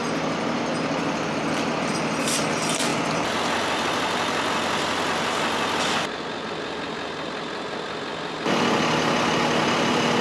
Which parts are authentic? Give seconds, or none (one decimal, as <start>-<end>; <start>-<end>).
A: 0.0-2.9; 3.9-10.2